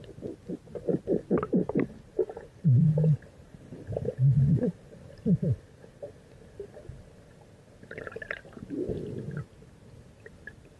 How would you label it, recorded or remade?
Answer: recorded